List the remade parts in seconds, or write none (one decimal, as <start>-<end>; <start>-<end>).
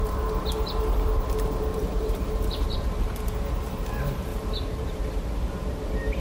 1.7-3.1; 4.3-5.1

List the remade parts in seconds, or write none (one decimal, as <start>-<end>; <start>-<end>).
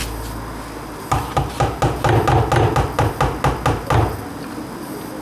none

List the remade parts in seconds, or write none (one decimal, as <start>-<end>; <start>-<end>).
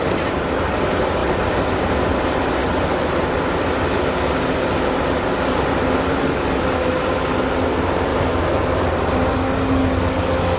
8.1-8.9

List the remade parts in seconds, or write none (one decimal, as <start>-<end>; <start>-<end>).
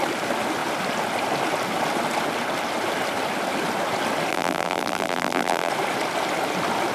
4.3-5.7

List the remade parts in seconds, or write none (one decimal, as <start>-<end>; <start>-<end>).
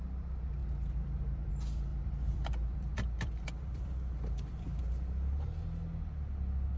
0.6-1.5; 1.9-4.8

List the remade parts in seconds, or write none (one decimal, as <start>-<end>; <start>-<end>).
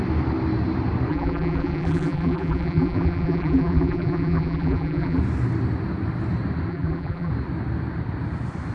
1.1-5.2; 6.7-7.3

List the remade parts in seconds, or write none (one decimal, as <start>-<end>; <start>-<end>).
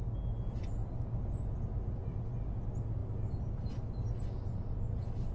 3.0-3.7